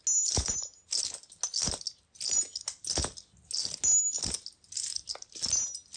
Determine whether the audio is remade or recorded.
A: recorded